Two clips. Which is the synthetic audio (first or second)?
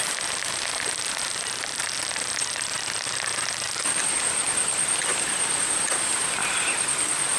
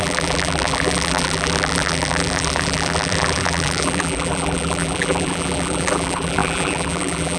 second